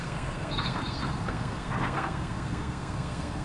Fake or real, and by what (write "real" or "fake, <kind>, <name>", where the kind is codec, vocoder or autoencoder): fake, codec, SNAC